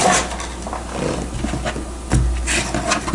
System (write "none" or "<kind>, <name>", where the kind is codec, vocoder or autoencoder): none